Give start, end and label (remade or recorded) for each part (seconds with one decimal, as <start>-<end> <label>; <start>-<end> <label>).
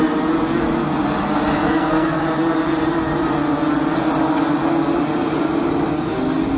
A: 0.0-1.5 recorded; 1.5-2.2 remade; 2.2-6.6 recorded